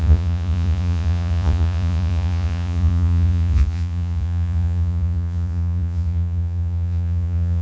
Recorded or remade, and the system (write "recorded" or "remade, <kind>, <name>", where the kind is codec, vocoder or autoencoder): remade, vocoder, Vocos